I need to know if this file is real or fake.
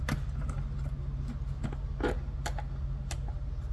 real